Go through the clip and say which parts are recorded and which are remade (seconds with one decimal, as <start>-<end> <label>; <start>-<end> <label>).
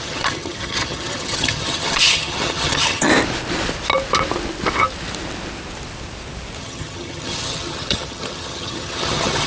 0.0-3.1 remade; 3.1-6.6 recorded; 6.6-9.5 remade